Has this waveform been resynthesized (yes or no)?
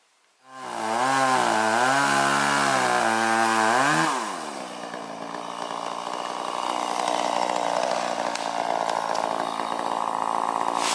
no